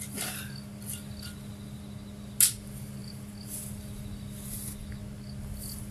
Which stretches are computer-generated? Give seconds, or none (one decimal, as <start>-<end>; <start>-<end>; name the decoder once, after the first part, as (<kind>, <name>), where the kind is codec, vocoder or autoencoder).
none